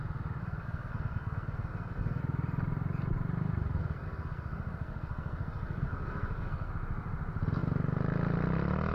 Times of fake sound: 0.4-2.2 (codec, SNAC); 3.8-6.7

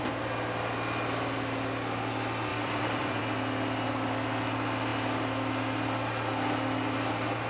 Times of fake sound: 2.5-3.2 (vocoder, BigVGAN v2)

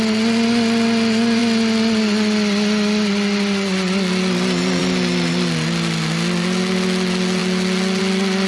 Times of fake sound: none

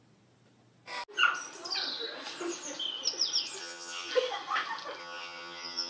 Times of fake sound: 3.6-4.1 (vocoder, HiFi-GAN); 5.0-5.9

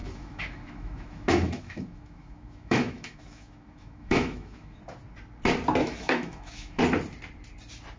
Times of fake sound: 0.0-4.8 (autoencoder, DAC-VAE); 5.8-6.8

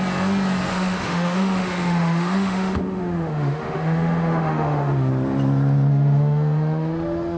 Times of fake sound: 0.7-5.1 (autoencoder, DAC-VAE); 5.9-7.4

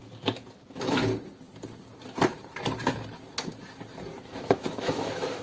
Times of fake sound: 0.6-1.0 (autoencoder, DAC-VAE); 4.2-5.4